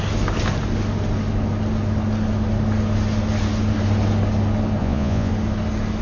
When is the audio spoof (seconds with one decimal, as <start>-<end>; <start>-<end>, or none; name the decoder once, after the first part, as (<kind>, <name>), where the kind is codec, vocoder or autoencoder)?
4.8-5.3 (vocoder, Vocos)